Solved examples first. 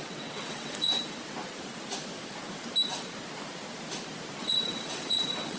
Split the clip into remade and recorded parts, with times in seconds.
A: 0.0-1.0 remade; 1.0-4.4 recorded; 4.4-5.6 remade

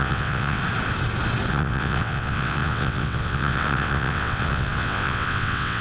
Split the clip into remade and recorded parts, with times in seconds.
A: 0.0-0.6 remade; 0.6-1.5 recorded; 1.5-5.8 remade

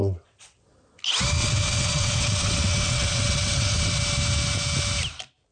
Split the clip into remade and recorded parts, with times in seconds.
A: 0.0-0.6 remade; 0.6-1.4 recorded; 1.4-4.0 remade; 4.0-5.5 recorded

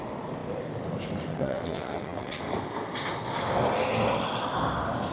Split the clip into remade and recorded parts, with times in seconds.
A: 0.0-1.3 recorded; 1.3-2.4 remade; 2.4-5.1 recorded